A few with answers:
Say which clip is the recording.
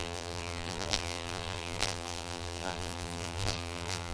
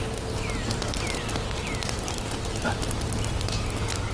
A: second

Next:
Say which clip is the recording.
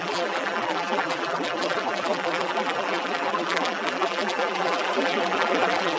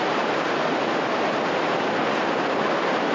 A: second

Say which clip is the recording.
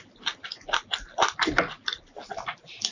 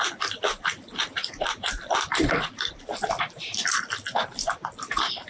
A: first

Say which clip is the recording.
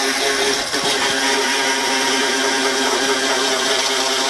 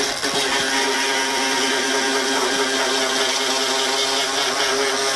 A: second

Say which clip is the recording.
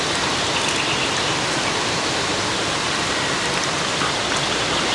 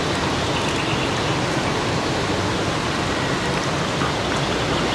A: second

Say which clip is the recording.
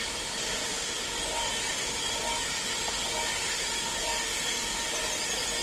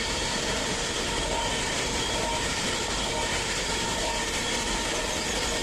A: first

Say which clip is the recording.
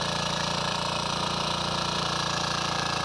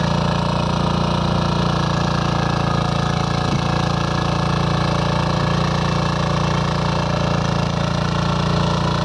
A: second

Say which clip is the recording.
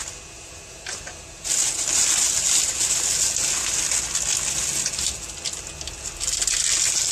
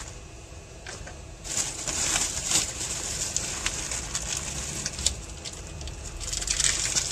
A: first